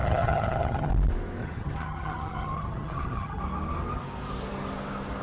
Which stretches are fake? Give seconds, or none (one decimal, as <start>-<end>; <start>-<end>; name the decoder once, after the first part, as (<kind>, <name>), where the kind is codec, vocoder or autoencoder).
0.0-0.9 (vocoder, HiFi-GAN); 1.4-3.4